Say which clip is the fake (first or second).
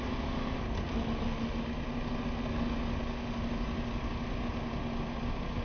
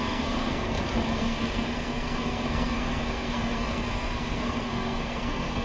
second